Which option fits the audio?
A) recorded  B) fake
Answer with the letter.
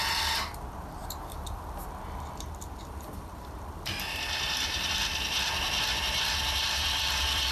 B